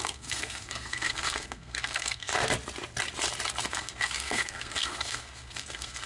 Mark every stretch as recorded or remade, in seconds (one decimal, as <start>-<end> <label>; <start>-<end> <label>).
0.0-2.3 remade; 2.3-3.7 recorded; 3.7-6.1 remade